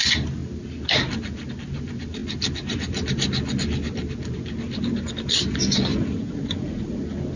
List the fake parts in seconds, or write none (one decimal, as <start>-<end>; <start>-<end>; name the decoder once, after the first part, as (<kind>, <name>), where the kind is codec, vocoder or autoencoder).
5.9-7.0 (vocoder, Vocos)